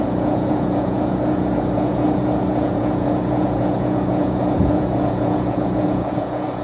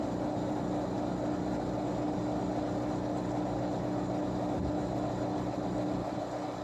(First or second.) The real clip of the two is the second